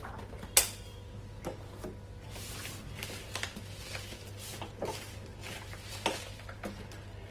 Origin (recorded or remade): recorded